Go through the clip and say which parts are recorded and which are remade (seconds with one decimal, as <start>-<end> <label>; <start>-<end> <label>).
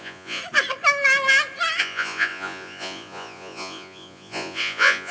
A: 0.0-0.4 remade; 0.4-1.8 recorded; 1.8-5.1 remade